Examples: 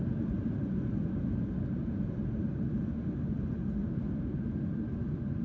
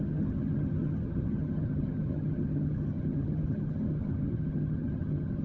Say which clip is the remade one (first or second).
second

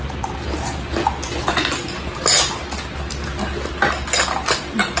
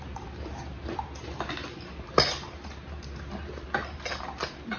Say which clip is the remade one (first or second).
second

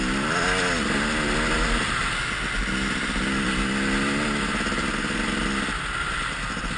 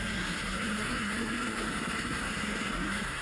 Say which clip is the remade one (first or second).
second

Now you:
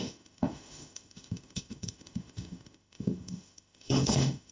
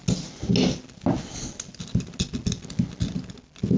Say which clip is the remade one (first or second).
first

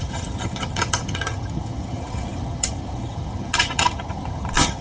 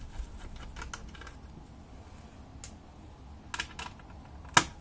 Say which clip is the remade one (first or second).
first